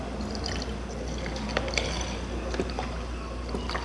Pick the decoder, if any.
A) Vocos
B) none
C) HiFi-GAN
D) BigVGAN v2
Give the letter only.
D